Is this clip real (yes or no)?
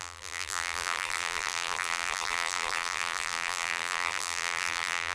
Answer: no